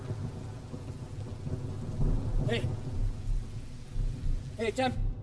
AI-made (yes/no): no